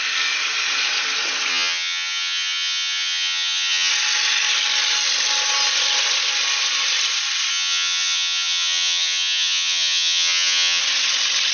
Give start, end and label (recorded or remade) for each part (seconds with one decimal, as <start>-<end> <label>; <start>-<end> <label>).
0.0-1.5 recorded; 1.5-3.9 remade; 3.9-7.5 recorded; 7.5-10.8 remade; 10.8-11.5 recorded